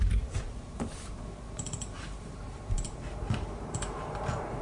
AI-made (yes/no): yes